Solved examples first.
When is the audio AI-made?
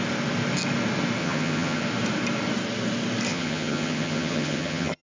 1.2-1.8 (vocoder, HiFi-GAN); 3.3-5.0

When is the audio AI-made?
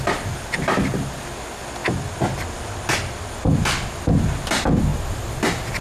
none